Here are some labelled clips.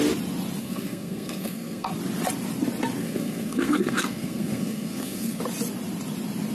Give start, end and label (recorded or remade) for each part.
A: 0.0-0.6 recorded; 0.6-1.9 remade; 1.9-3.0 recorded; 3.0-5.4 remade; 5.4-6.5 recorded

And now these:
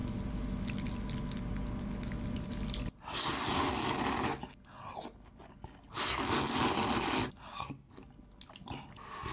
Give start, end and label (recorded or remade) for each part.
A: 0.0-7.5 recorded; 7.5-8.0 remade; 8.0-9.3 recorded

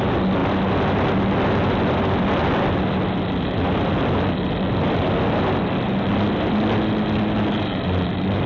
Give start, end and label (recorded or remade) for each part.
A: 0.0-8.5 recorded

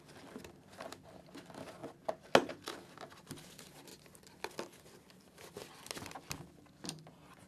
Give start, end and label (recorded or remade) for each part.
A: 0.0-7.5 recorded

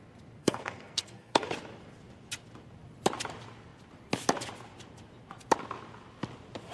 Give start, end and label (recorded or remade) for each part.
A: 0.0-0.4 recorded; 0.4-1.5 remade; 1.5-6.7 recorded

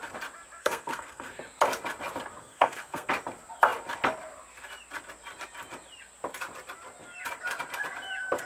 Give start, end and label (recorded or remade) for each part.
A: 0.0-0.6 recorded; 0.6-1.4 remade; 1.4-2.4 recorded; 2.4-3.1 remade; 3.1-8.4 recorded